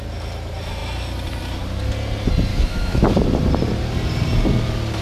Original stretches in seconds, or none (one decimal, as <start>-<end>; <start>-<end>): 0.0-2.5; 3.0-5.0